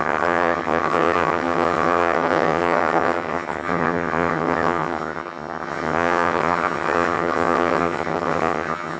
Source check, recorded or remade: remade